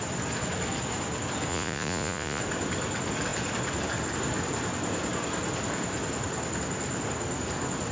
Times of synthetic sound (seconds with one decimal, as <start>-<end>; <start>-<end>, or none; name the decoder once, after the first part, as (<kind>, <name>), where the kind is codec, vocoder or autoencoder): 1.5-2.4 (vocoder, Vocos)